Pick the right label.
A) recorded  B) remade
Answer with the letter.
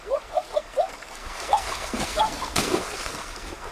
B